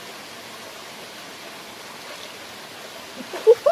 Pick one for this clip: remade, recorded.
recorded